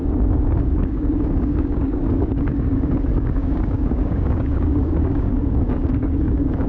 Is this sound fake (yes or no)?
yes